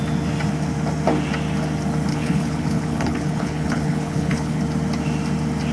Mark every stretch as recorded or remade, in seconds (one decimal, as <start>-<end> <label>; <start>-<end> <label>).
0.0-2.1 recorded; 2.1-4.6 remade; 4.6-5.7 recorded